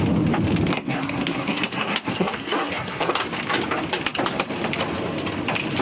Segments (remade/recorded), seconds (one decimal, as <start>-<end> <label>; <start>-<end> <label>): 0.0-0.7 recorded; 0.7-3.2 remade; 3.2-5.8 recorded